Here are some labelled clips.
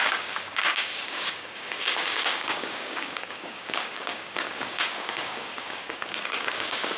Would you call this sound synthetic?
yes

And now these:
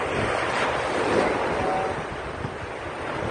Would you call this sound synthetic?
no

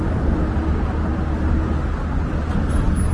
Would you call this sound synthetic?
no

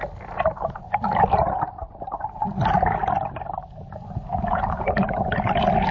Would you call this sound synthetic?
no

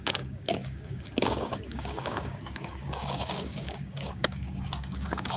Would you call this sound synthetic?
yes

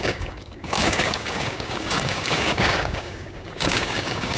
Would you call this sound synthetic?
yes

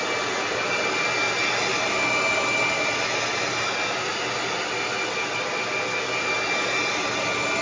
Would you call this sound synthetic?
no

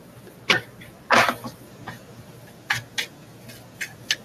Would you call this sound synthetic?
no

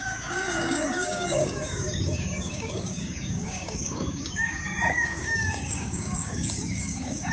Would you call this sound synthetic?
yes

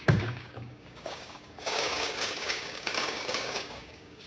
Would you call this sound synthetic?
yes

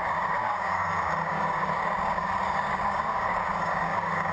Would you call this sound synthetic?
yes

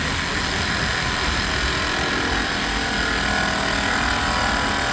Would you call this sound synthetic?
no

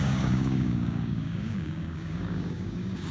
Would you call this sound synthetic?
yes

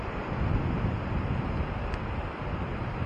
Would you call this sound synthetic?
no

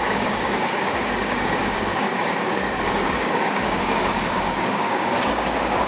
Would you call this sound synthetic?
yes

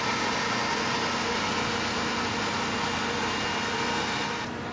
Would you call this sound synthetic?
no